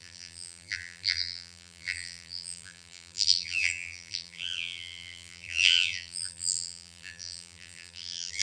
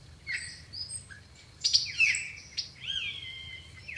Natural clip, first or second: second